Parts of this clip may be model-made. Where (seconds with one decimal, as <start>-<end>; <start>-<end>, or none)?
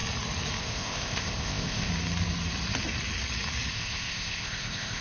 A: 0.6-1.9; 3.7-5.0